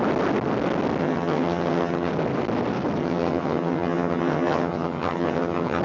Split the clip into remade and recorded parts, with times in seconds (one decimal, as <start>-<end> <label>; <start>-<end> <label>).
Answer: 0.0-1.0 recorded; 1.0-2.1 remade; 2.1-3.0 recorded; 3.0-5.8 remade